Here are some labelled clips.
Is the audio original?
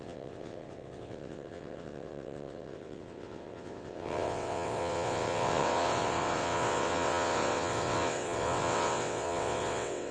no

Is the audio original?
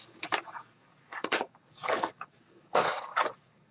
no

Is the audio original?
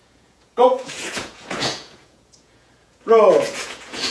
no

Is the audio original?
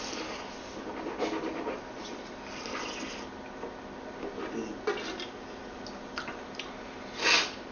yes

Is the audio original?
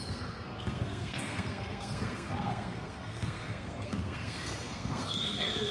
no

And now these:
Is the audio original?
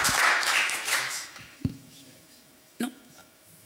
no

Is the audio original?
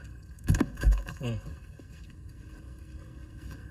no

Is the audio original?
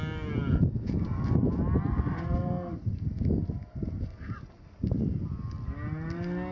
yes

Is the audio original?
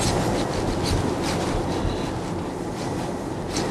yes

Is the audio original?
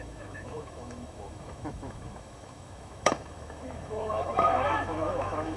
no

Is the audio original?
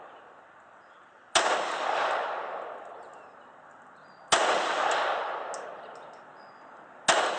yes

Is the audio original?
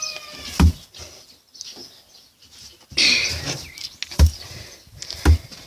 yes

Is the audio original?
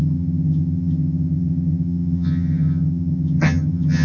no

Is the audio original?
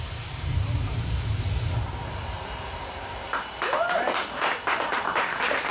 no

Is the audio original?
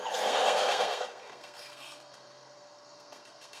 no